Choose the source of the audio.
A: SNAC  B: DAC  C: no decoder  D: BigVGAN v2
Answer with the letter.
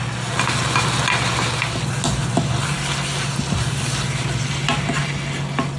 C